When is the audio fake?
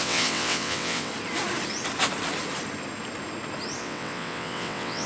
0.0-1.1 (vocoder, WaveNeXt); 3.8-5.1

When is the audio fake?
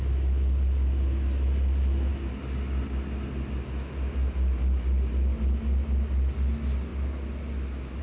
none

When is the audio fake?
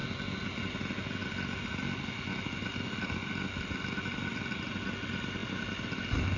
none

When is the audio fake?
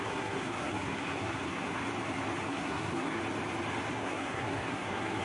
0.0-1.8 (codec, SNAC); 2.5-3.2; 3.9-5.2